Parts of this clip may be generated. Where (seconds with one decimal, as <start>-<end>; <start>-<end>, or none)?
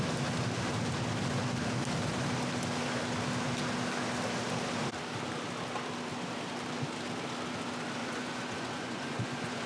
8.0-9.7